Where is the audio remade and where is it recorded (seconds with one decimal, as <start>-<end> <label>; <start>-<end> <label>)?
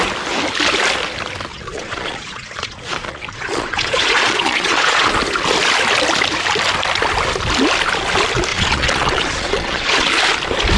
0.0-1.5 recorded; 1.5-5.1 remade; 5.1-8.5 recorded; 8.5-10.1 remade; 10.1-10.8 recorded